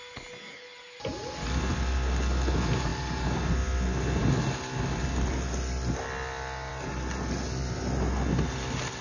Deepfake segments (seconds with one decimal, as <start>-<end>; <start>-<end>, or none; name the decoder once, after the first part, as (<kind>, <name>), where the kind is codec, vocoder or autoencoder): none